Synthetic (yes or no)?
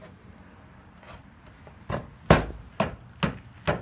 no